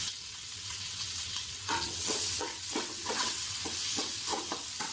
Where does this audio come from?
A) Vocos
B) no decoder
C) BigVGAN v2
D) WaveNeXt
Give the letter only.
D